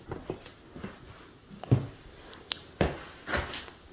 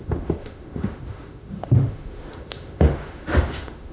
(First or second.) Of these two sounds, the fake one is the second